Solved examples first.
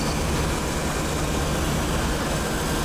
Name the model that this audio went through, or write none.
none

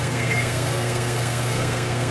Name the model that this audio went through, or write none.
codec, SNAC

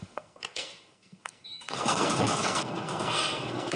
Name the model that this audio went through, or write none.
codec, SNAC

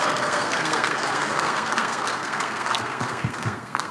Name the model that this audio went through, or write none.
codec, SNAC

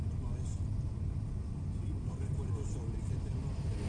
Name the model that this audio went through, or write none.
none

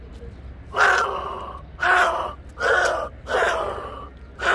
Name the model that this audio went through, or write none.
none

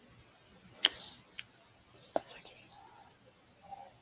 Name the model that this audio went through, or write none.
none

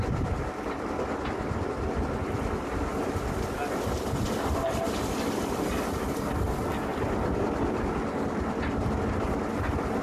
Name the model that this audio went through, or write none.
none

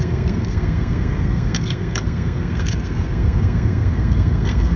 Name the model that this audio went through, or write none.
codec, SNAC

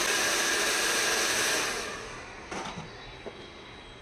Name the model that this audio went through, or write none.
none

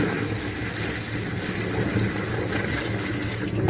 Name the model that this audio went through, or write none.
none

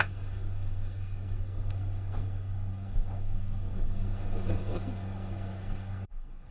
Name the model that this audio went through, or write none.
codec, SNAC